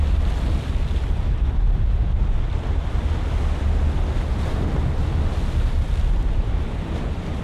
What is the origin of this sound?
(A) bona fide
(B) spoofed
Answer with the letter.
A